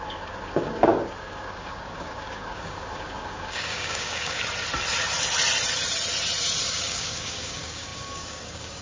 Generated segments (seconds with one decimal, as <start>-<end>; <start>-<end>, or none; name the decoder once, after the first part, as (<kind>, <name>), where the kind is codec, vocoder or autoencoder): 0.0-4.4 (codec, DAC); 6.6-8.8